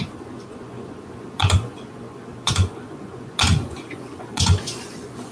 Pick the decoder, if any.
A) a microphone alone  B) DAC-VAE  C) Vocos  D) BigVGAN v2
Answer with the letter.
C